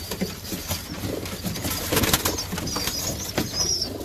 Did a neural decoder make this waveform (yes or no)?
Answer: yes